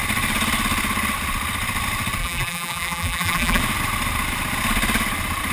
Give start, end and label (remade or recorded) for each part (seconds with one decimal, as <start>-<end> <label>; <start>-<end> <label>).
0.0-2.2 recorded; 2.2-3.6 remade; 3.6-5.5 recorded